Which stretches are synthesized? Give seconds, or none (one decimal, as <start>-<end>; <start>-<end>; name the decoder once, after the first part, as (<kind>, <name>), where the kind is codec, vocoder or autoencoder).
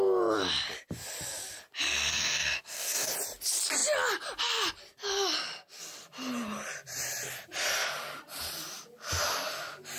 2.1-3.1 (codec, DAC)